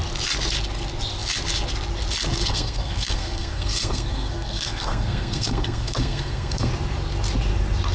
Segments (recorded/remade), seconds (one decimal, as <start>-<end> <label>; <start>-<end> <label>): 0.0-2.4 recorded; 2.4-6.7 remade; 6.7-7.9 recorded

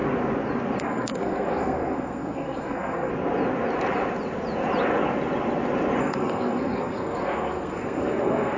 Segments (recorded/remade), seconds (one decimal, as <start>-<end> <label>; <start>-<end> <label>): 0.0-0.8 recorded; 0.8-3.1 remade; 3.1-6.0 recorded; 6.0-8.6 remade